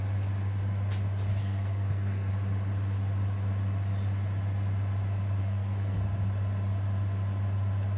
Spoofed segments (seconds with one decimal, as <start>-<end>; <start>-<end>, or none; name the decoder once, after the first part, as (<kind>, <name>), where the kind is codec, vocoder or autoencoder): 1.4-2.3 (codec, SNAC); 5.4-6.0